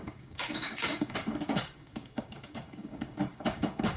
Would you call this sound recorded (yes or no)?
no